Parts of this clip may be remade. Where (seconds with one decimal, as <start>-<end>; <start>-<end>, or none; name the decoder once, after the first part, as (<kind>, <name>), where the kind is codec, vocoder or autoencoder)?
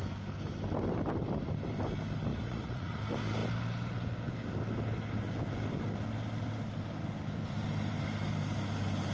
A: 2.3-3.0 (vocoder, Vocos)